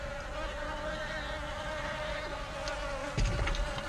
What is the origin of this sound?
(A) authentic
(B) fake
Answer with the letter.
A